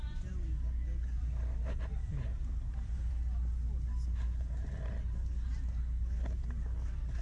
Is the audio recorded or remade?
recorded